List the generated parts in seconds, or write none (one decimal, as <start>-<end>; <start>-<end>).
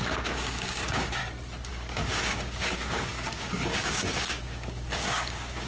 0.0-1.2; 1.7-5.7